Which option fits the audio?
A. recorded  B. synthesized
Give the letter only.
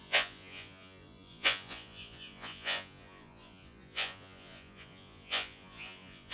B